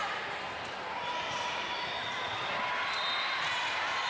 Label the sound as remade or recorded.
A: recorded